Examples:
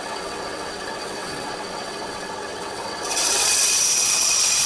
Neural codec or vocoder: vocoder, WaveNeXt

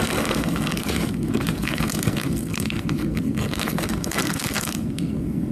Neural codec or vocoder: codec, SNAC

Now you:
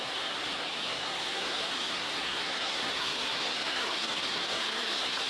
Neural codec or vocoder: codec, SNAC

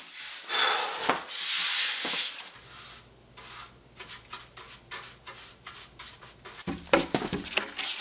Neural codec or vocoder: none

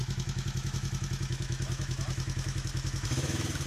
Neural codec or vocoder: autoencoder, DAC-VAE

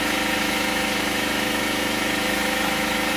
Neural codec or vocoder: autoencoder, DAC-VAE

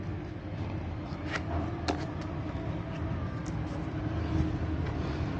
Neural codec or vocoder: none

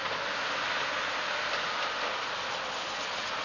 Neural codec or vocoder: none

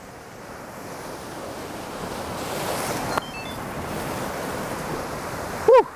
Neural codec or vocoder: vocoder, BigVGAN v2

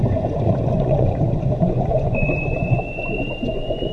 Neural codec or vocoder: vocoder, Vocos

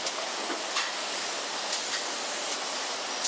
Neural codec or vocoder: none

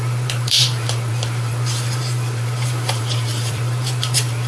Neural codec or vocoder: vocoder, BigVGAN v2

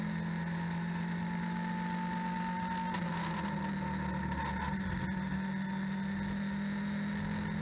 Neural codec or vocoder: none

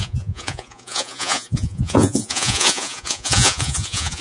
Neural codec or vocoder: vocoder, Vocos